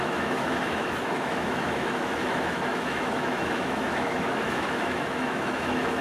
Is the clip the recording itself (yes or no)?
no